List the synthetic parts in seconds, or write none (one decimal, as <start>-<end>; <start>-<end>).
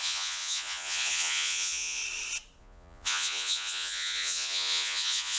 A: 0.0-2.0; 2.6-5.4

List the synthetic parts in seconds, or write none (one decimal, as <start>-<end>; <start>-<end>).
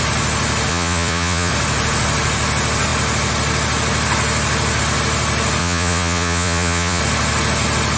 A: 0.7-1.5; 5.6-7.0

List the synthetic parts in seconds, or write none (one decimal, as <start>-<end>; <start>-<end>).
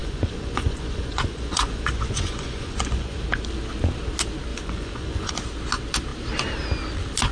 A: 0.0-3.2; 4.5-5.3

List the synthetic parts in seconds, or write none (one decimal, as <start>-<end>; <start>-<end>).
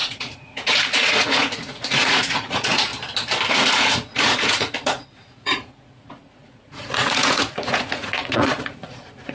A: 0.0-2.9; 3.5-9.3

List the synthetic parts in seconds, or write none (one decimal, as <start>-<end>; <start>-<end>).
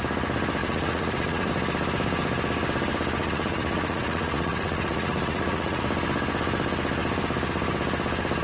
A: 0.6-1.5; 3.2-5.8